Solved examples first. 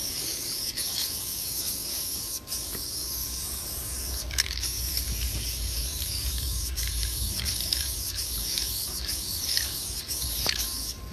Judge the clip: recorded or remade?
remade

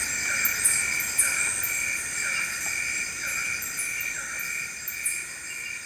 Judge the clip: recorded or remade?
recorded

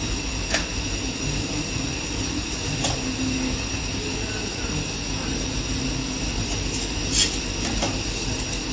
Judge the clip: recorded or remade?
recorded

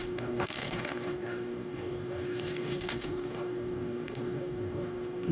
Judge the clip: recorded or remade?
remade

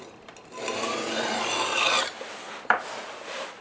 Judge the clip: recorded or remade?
recorded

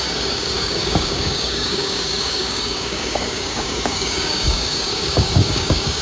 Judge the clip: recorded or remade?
remade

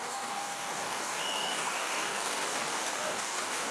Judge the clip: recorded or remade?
remade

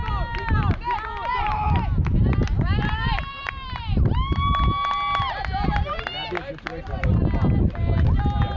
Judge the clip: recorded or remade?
recorded